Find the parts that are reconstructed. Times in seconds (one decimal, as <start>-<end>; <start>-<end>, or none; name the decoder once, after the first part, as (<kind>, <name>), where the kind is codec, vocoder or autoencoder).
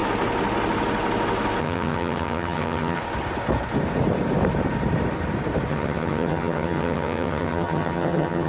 1.6-3.0 (vocoder, HiFi-GAN); 5.7-8.5